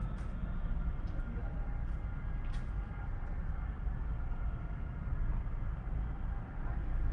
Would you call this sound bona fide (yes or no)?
yes